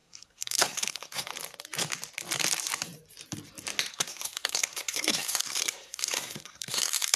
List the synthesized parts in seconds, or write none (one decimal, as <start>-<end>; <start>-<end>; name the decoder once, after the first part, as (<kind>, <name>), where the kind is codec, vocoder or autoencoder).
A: 0.0-1.3 (codec, SNAC); 3.9-7.2